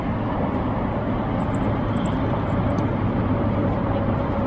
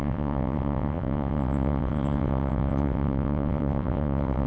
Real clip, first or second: first